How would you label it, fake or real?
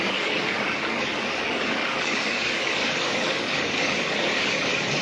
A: fake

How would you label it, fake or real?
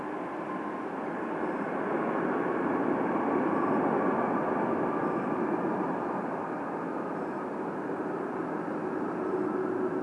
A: real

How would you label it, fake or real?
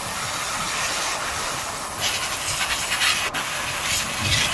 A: real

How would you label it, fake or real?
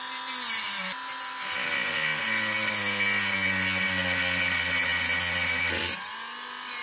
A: real